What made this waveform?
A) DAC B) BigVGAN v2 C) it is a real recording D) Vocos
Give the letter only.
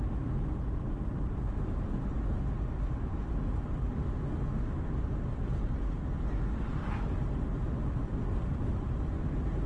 C